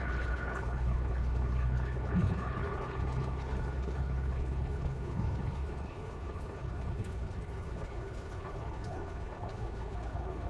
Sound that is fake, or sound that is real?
fake